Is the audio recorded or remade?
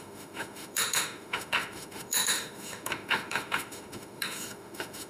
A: remade